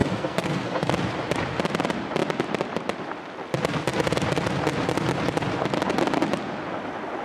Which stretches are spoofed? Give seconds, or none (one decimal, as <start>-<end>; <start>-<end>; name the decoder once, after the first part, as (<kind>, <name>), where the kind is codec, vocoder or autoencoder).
0.0-0.9 (codec, SNAC)

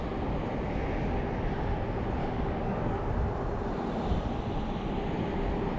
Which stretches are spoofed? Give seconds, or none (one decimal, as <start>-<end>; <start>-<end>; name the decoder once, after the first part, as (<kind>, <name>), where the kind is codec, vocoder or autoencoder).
2.2-3.1 (codec, DAC)

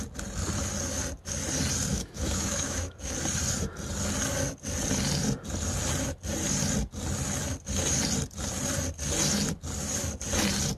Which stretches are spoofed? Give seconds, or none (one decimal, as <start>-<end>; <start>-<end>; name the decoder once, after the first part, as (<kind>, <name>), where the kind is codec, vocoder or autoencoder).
1.9-3.1 (autoencoder, DAC-VAE)

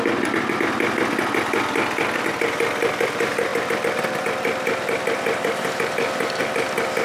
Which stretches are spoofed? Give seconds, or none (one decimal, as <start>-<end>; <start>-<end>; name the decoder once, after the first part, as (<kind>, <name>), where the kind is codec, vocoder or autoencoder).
3.5-6.4 (vocoder, BigVGAN v2)

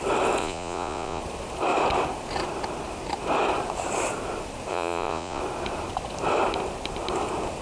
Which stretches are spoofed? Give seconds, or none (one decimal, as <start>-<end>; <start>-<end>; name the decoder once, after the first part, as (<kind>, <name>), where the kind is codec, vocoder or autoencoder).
0.4-1.2 (vocoder, Vocos); 4.7-5.4

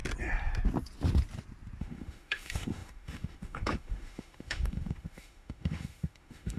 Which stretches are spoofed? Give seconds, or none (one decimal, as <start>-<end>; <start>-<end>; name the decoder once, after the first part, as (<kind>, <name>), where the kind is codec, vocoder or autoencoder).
1.8-6.6 (autoencoder, DAC-VAE)